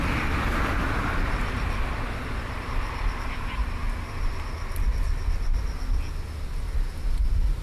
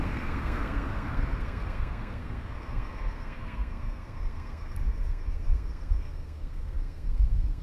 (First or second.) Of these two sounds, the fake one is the second